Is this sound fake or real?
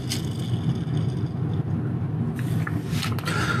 real